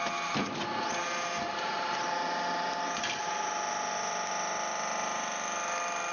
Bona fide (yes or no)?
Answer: yes